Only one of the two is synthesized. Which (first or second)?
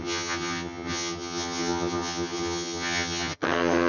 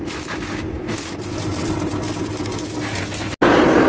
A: first